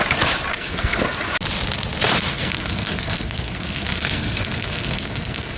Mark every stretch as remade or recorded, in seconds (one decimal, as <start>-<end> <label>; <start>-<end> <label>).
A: 0.0-0.5 recorded; 0.5-1.0 remade; 1.0-2.3 recorded; 2.3-5.6 remade